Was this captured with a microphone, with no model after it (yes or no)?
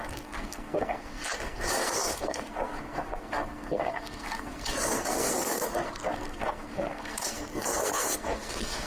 no